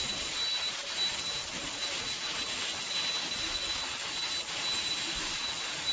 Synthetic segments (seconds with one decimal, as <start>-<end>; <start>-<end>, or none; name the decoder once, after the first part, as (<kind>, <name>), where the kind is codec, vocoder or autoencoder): none